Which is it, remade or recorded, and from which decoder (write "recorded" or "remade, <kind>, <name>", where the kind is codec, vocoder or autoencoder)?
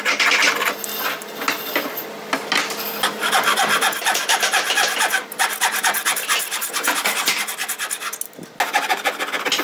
recorded